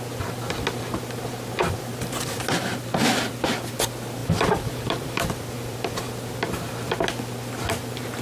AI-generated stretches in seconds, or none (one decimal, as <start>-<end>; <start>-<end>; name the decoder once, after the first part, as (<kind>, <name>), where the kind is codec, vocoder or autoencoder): 1.6-2.4 (vocoder, BigVGAN v2); 4.2-6.0